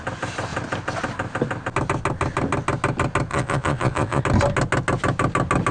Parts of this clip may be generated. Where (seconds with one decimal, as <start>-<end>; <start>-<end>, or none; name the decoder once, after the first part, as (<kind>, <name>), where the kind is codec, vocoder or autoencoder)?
3.3-4.2 (vocoder, Vocos)